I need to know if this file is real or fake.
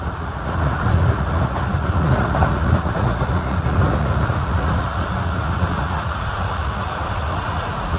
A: fake